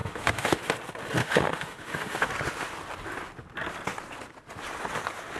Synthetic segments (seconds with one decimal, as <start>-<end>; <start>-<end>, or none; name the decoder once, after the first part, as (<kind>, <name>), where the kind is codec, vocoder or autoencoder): 0.0-0.6 (autoencoder, DAC-VAE); 1.2-2.3